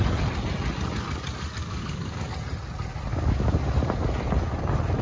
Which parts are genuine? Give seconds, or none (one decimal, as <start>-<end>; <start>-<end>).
0.0-1.6; 2.3-3.1; 3.6-5.0